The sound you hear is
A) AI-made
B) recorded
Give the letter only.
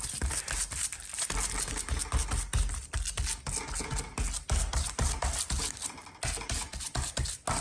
B